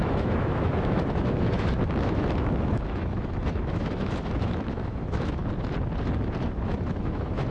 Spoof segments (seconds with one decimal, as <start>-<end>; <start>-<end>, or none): 0.0-5.4; 6.7-7.5